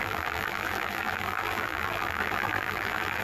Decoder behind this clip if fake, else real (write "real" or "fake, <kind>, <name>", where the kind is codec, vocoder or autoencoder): fake, vocoder, BigVGAN v2